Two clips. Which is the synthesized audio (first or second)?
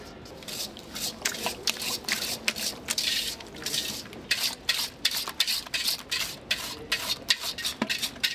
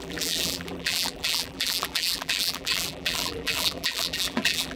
second